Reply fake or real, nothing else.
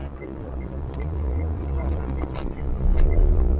fake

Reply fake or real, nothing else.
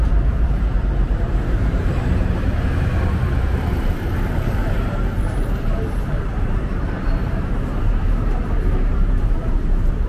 fake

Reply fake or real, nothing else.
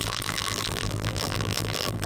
fake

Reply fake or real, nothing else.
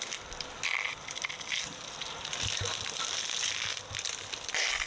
real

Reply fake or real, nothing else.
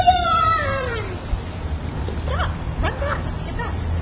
fake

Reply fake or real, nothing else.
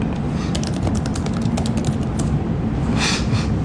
real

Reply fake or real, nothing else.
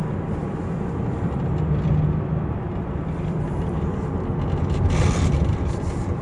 real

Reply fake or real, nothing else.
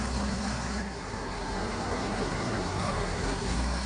fake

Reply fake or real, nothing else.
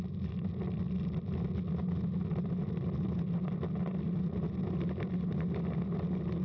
real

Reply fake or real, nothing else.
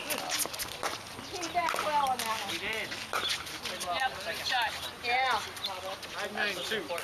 real